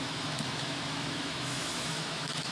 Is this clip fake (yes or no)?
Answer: yes